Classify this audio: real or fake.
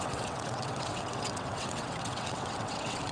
fake